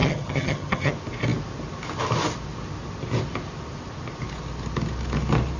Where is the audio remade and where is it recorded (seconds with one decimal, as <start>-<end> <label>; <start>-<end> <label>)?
0.0-0.9 remade; 0.9-5.6 recorded